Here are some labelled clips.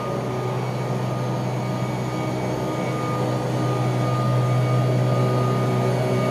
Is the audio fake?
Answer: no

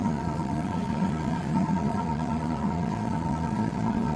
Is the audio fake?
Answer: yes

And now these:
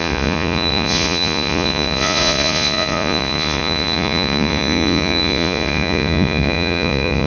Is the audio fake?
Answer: yes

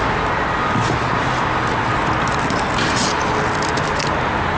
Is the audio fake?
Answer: no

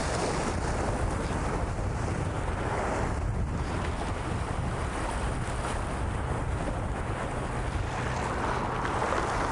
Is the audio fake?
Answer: no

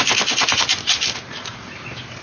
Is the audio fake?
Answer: no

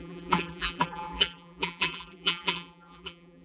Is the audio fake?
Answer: yes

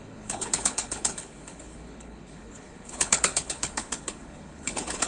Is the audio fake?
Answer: yes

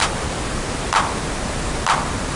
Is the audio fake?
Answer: yes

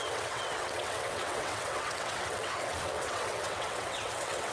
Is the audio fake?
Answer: yes